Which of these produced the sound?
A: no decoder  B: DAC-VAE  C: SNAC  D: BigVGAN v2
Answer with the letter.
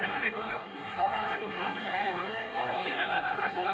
C